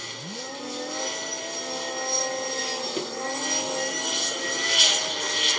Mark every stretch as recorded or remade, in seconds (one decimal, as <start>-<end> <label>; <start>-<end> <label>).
0.0-5.6 recorded